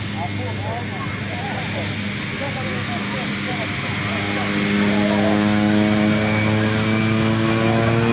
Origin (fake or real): real